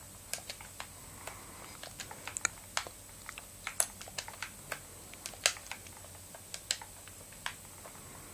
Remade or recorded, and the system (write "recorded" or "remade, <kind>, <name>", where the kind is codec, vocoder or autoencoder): recorded